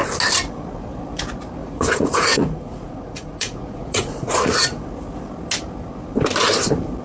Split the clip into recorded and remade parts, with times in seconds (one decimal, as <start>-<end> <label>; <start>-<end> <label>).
0.0-1.6 recorded; 1.6-4.8 remade; 4.8-7.0 recorded

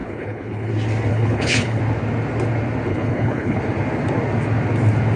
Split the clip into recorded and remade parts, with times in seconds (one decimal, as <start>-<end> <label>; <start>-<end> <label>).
0.0-0.7 remade; 0.7-1.1 recorded; 1.1-1.8 remade; 1.8-2.9 recorded; 2.9-3.6 remade; 3.6-5.2 recorded